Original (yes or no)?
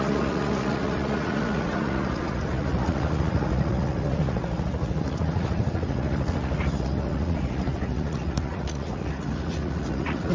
no